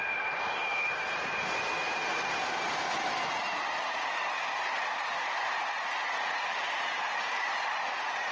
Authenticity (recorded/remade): recorded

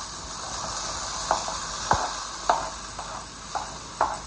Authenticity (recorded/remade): recorded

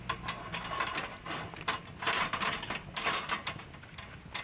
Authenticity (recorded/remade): recorded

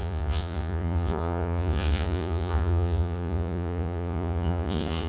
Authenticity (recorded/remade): remade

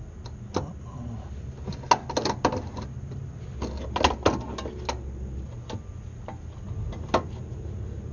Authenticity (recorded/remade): recorded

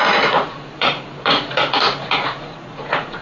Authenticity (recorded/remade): remade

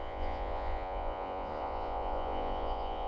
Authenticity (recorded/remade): remade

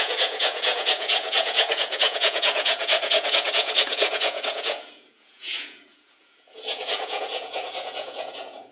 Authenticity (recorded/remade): remade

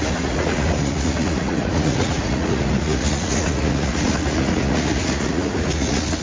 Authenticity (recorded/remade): remade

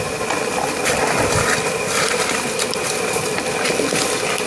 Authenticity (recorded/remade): recorded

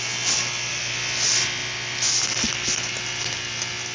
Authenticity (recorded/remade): recorded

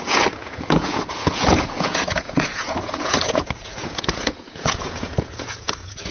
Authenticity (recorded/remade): remade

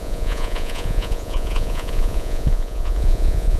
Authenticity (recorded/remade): remade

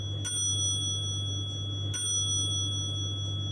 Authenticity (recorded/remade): recorded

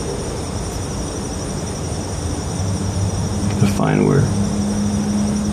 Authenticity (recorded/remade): recorded